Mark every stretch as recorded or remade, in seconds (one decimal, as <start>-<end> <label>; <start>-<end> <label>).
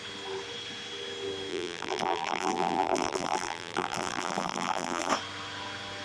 0.0-1.5 recorded; 1.5-5.1 remade; 5.1-6.0 recorded